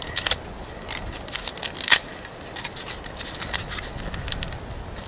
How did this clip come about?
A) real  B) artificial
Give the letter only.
A